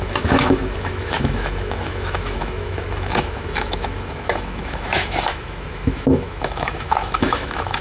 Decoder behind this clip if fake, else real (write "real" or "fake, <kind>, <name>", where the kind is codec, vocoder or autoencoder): fake, autoencoder, DAC-VAE